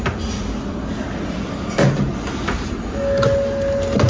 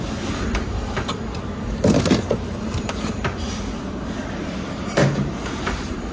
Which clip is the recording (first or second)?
first